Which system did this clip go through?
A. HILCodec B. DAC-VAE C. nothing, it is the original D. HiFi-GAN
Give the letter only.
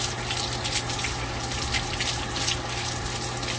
C